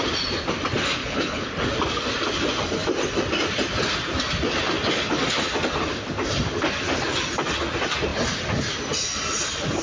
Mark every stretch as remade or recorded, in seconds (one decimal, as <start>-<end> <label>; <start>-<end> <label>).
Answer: 0.0-1.0 recorded; 1.0-1.5 remade; 1.5-9.8 recorded